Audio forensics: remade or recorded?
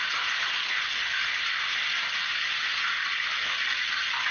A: recorded